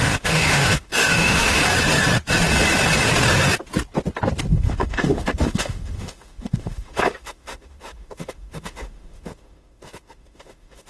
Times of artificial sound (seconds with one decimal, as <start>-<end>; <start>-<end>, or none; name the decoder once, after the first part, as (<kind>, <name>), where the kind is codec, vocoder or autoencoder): 0.0-1.6 (autoencoder, DAC-VAE); 4.5-10.9